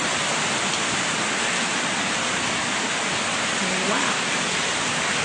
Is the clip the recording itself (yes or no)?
yes